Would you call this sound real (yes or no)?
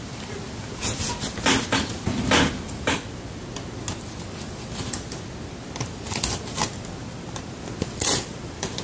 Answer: yes